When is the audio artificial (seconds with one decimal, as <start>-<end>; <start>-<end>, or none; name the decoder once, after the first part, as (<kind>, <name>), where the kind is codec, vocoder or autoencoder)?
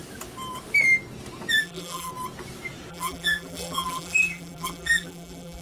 1.6-2.1 (vocoder, BigVGAN v2); 2.9-5.6